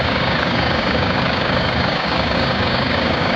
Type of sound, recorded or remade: remade